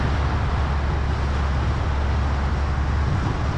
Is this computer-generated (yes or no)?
no